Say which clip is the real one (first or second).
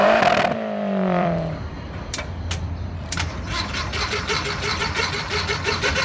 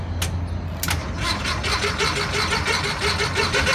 second